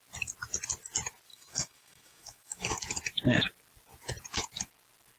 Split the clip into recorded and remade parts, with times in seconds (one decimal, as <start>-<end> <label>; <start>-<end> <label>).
0.0-1.3 recorded; 1.3-2.8 remade; 2.8-5.2 recorded